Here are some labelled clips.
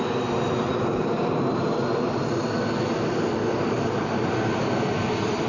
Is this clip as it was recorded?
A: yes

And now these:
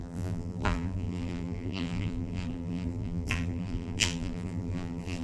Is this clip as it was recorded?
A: no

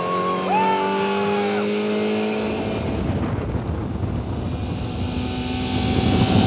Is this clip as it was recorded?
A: yes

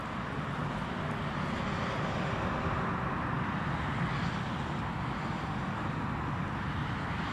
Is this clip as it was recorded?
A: yes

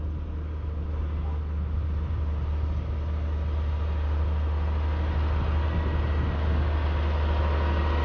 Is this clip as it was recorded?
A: yes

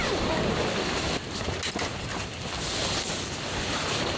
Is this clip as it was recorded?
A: yes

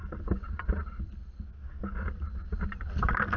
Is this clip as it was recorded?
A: yes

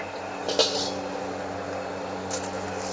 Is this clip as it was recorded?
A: yes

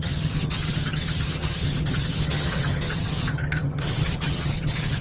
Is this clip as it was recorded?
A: no